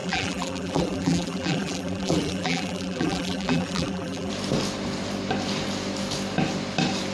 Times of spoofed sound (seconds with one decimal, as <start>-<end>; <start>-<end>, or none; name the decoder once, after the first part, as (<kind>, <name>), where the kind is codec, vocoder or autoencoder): 0.0-4.3 (vocoder, BigVGAN v2)